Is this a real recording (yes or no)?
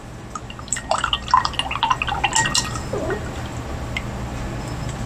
yes